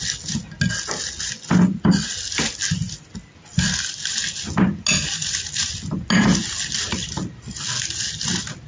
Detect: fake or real real